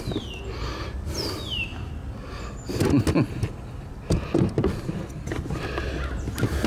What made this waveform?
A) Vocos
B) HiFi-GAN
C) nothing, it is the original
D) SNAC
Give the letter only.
C